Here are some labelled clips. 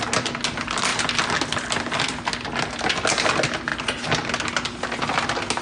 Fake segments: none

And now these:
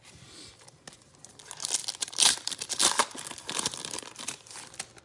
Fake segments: 1.8-5.0 (vocoder, BigVGAN v2)

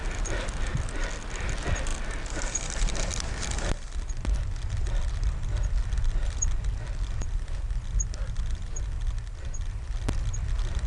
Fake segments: 0.0-0.7 (vocoder, BigVGAN v2)

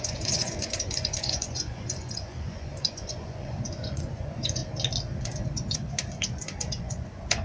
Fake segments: 0.0-4.6 (vocoder, Vocos); 5.2-7.4

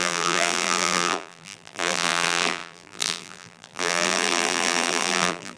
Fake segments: 0.0-5.6 (vocoder, BigVGAN v2)

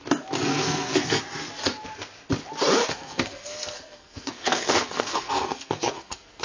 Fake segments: 0.5-1.2 (codec, SNAC); 2.8-6.4

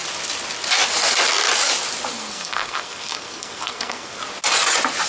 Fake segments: 2.1-4.2 (codec, SNAC)

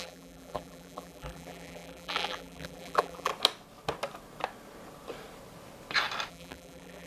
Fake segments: 0.0-3.3 (vocoder, BigVGAN v2); 6.3-7.1